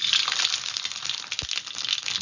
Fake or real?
real